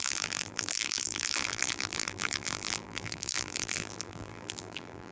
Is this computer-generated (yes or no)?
yes